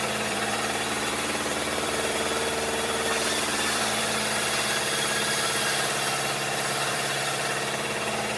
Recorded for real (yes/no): no